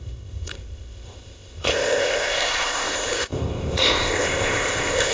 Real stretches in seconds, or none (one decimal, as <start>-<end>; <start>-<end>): none